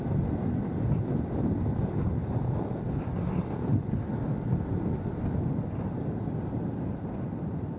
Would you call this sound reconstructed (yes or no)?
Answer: no